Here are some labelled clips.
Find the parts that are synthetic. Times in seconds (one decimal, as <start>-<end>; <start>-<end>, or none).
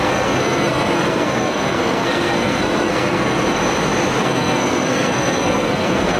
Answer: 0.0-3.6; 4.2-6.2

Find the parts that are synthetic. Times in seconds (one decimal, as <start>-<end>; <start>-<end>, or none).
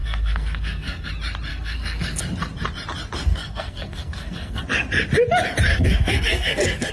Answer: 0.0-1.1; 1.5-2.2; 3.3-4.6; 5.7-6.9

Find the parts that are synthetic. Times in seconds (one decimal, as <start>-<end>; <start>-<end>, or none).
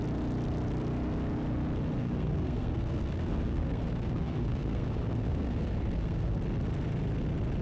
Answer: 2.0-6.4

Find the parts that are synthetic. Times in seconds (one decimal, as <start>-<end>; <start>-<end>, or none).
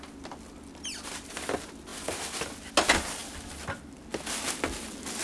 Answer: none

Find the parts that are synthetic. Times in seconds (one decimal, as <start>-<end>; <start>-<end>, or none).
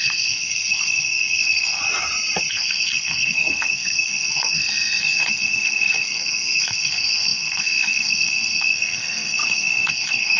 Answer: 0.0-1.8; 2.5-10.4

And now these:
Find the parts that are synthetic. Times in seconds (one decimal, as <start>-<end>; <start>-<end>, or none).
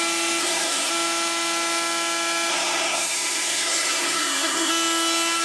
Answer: 0.4-0.9; 2.5-4.7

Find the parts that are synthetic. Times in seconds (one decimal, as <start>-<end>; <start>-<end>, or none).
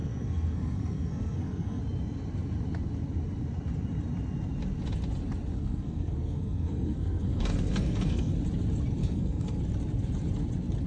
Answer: 0.0-1.8; 5.5-8.3; 9.0-9.6